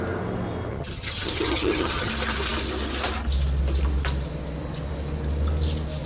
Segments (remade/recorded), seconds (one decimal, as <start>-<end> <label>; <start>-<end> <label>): 0.0-0.7 recorded; 0.7-2.1 remade; 2.1-6.1 recorded